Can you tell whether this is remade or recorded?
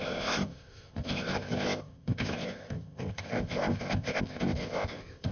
remade